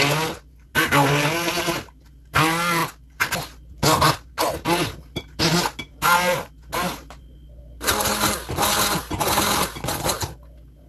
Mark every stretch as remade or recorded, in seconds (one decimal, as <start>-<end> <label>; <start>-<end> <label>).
0.0-10.9 recorded